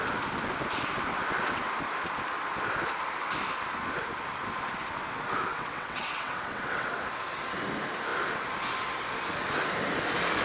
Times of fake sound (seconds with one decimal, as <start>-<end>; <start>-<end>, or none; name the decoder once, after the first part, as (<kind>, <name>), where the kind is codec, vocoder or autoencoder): 5.5-7.0 (vocoder, WaveNeXt)

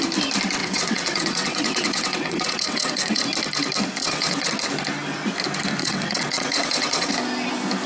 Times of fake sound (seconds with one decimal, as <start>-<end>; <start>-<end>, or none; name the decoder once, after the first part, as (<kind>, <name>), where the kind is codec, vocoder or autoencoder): 0.6-3.2 (vocoder, WaveNeXt); 4.0-4.5; 5.8-7.1

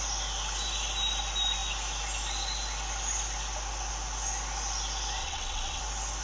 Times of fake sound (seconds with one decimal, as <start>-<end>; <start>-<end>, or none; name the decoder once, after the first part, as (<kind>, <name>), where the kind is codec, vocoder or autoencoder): 5.2-5.8 (vocoder, WaveNeXt)

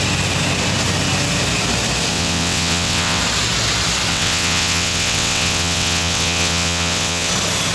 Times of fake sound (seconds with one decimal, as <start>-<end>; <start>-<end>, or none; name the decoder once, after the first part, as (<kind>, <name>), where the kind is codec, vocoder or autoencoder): 2.1-3.2 (vocoder, WaveNeXt); 4.1-7.3

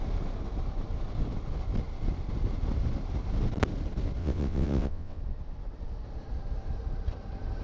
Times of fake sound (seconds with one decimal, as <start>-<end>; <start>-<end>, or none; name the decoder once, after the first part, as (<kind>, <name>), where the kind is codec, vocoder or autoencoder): 4.2-5.2 (vocoder, WaveNeXt)

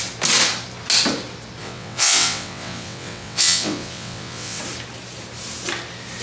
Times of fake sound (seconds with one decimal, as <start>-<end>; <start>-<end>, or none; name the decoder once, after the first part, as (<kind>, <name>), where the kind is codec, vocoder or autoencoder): 1.6-4.6 (vocoder, WaveNeXt)